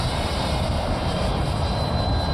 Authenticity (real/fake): fake